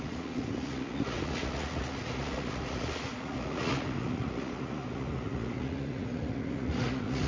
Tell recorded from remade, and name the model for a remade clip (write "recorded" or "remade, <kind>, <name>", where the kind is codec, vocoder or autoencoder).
remade, vocoder, Vocos